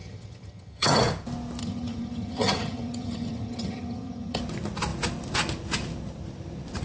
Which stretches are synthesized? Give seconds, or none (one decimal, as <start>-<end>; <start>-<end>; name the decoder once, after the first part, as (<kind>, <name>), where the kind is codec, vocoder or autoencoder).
0.0-1.0 (vocoder, HiFi-GAN); 1.6-4.4